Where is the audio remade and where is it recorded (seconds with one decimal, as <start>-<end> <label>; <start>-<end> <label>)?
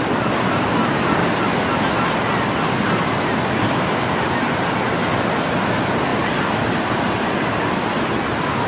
0.0-1.2 remade; 1.2-4.4 recorded; 4.4-8.7 remade